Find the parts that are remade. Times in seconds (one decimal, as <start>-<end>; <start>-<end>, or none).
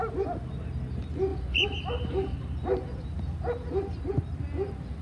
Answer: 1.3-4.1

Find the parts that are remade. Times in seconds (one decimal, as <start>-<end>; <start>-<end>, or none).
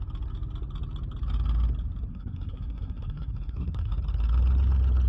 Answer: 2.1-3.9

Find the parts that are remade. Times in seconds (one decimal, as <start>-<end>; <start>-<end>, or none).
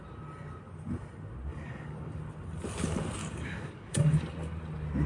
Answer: 1.5-2.2; 3.2-4.2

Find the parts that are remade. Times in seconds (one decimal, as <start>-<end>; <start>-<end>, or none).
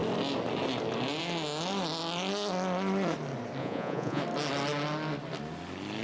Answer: 3.6-4.2